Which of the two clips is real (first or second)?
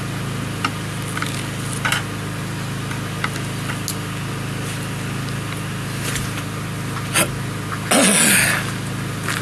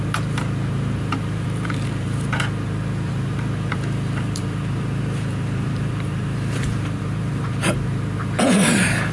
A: first